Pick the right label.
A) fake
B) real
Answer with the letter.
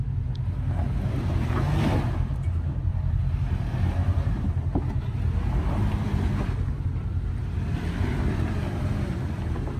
B